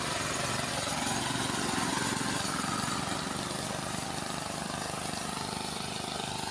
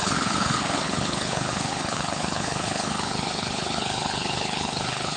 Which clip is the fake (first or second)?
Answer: second